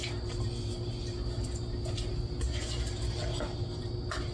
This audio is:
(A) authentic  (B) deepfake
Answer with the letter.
A